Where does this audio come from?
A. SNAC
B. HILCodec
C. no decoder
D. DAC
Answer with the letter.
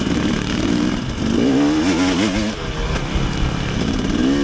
C